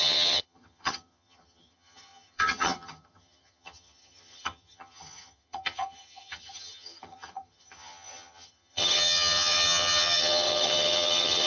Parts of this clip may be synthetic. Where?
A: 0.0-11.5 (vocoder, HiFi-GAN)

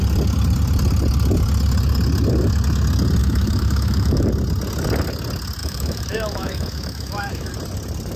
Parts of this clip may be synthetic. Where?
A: 3.2-4.3 (autoencoder, DAC-VAE); 5.6-7.5

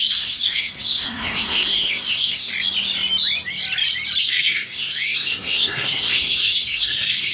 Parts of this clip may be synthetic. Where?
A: 0.0-2.5 (codec, SNAC); 4.2-7.3

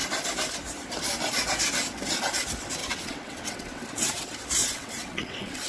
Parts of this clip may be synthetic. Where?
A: 2.8-3.8 (vocoder, WaveNeXt); 4.6-5.7

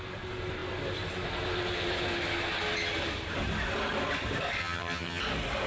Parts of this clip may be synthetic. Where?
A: 4.6-5.2 (vocoder, HiFi-GAN)

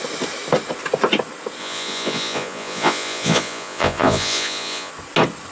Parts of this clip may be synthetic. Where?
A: 1.6-4.9 (vocoder, Vocos)

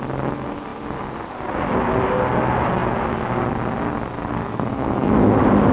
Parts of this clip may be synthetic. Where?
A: 4.3-5.1 (codec, SNAC)